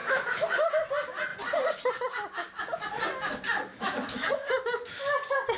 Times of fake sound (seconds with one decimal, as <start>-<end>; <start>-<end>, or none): 0.0-0.7; 3.7-5.0